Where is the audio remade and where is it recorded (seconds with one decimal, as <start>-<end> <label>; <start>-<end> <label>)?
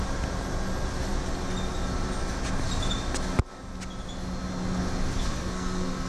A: 0.0-5.2 recorded; 5.2-6.1 remade